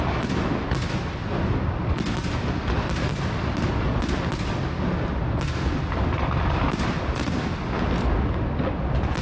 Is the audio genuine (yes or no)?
yes